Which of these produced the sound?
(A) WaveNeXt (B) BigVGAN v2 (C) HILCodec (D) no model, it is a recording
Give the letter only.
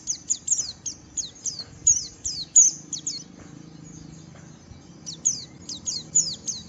D